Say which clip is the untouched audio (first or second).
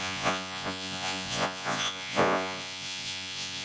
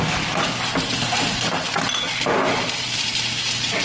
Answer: second